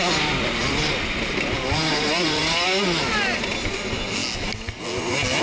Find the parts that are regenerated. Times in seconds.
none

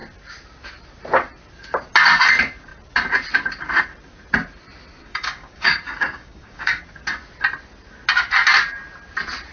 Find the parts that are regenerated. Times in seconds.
5.0-6.8

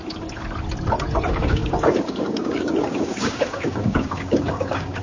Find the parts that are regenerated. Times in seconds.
1.2-5.0

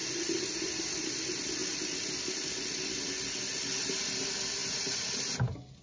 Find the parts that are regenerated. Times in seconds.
none

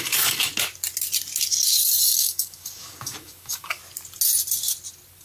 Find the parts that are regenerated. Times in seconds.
0.0-0.5; 2.0-3.8